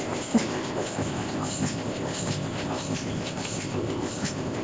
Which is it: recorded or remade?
remade